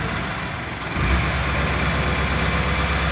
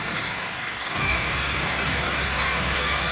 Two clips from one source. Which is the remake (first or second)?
second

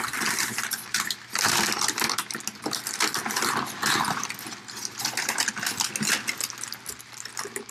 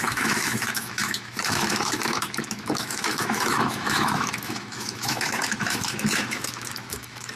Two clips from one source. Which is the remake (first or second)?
second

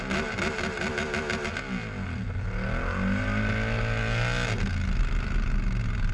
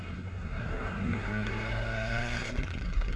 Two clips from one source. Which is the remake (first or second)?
second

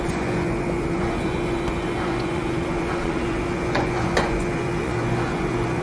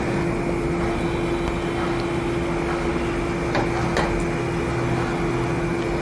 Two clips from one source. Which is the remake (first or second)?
first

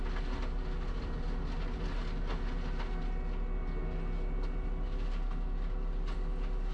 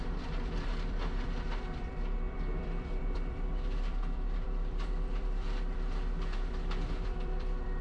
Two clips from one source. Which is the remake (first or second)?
second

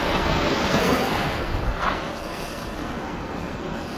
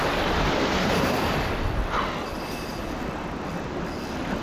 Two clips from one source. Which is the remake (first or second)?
first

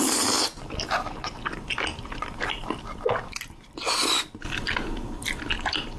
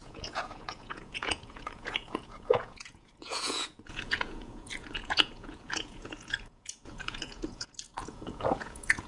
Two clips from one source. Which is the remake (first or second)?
second